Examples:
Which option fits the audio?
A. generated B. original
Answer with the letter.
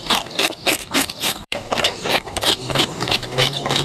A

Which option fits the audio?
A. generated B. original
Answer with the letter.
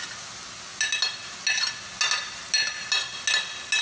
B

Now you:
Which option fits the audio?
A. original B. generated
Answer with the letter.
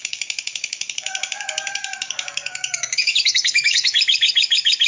B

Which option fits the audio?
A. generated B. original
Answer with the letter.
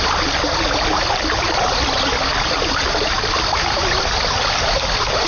B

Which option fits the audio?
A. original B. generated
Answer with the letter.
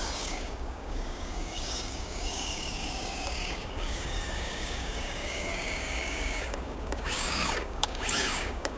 B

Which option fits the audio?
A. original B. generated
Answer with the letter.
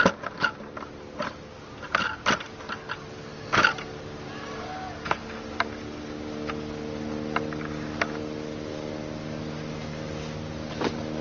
A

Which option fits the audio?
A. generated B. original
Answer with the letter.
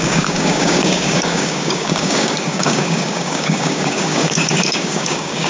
A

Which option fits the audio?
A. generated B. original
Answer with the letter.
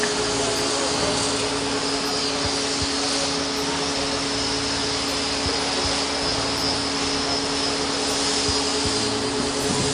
B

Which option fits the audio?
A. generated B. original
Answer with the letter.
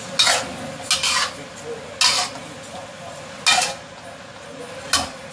B